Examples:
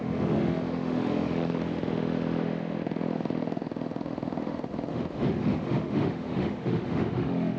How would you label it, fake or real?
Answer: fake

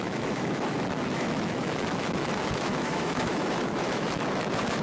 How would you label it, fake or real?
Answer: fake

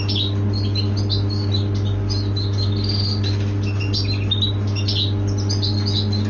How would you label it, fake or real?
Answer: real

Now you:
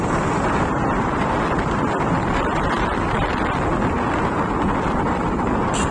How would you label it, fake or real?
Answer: real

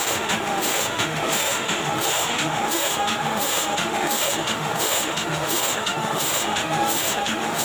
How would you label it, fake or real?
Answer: fake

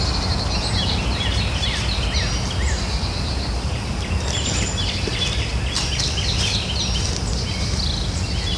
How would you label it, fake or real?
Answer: real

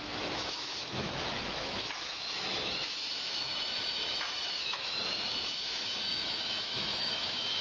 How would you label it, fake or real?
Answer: fake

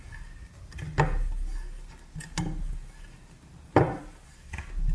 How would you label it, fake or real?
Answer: real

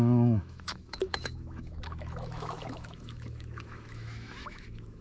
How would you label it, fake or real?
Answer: fake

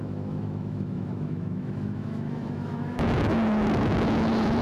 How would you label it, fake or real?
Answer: fake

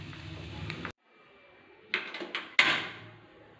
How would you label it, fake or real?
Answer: real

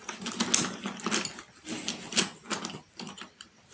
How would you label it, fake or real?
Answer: real